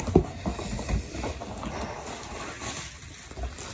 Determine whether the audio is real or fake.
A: real